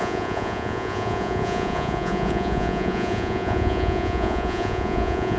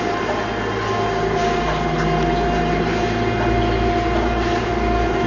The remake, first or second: first